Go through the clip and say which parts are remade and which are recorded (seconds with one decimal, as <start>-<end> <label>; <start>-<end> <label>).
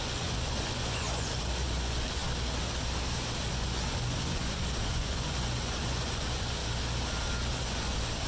0.0-2.2 remade; 2.2-3.5 recorded; 3.5-6.6 remade; 6.6-7.5 recorded; 7.5-8.3 remade